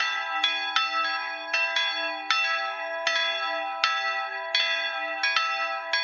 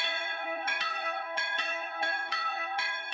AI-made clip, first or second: second